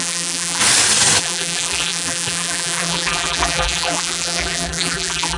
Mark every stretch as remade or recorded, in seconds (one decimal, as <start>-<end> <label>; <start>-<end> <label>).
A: 0.0-0.6 remade; 0.6-1.2 recorded; 1.2-5.4 remade